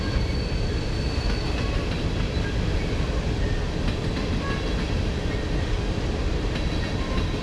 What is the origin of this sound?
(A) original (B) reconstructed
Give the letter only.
A